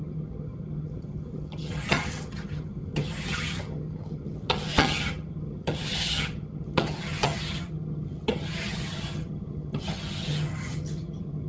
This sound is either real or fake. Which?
fake